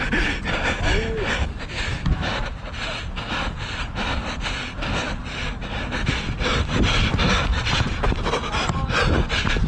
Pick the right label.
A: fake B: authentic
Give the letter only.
B